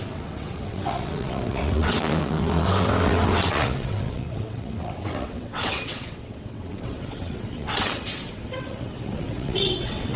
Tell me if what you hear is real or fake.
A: fake